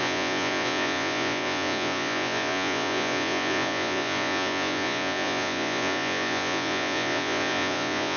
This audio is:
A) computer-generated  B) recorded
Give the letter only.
A